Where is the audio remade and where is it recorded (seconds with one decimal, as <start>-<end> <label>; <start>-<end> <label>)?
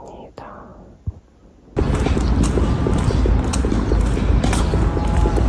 0.0-5.5 recorded